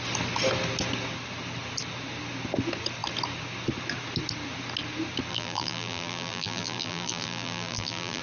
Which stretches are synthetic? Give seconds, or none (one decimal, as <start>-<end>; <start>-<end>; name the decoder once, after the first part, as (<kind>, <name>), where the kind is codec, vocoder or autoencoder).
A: 5.3-8.2 (vocoder, BigVGAN v2)